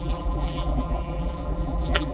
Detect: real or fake fake